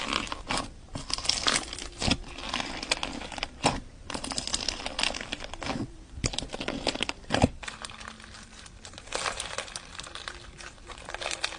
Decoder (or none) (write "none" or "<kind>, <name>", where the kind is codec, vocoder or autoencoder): vocoder, BigVGAN v2